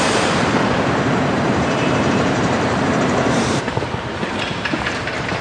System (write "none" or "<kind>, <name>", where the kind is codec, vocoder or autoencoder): vocoder, BigVGAN v2